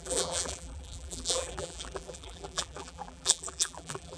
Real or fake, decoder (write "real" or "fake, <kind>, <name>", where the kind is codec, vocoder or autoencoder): fake, vocoder, BigVGAN v2